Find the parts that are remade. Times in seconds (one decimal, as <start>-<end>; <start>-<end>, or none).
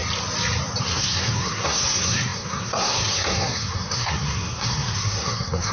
0.8-5.7